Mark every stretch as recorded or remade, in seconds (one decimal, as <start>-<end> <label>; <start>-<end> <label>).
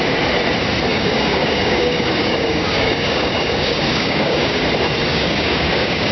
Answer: 0.0-0.9 recorded; 0.9-4.6 remade; 4.6-5.1 recorded; 5.1-6.1 remade